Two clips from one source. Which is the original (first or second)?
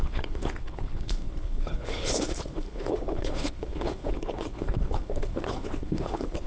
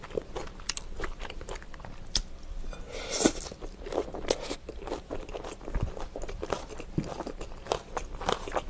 second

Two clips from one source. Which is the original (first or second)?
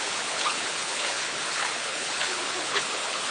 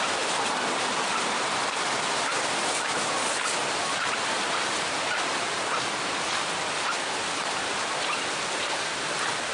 second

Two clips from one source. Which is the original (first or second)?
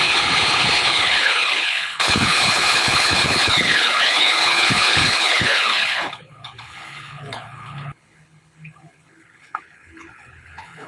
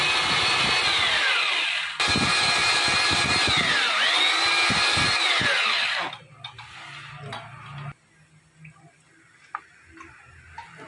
second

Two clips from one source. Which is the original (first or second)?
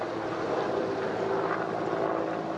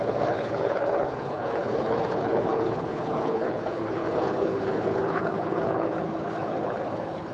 first